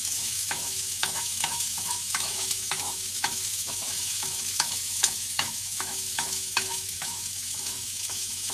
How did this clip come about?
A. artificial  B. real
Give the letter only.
A